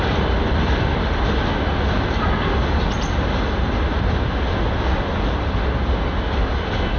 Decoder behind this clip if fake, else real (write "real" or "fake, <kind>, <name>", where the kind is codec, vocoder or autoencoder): real